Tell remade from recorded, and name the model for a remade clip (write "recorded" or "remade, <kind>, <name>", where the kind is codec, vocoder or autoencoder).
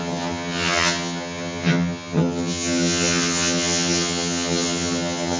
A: remade, vocoder, HiFi-GAN